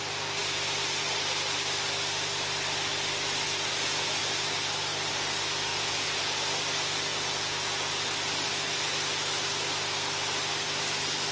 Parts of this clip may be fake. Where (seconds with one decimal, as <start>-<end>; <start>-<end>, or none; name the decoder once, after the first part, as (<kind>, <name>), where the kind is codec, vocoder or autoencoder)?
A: 5.7-6.2 (vocoder, Vocos); 7.1-7.9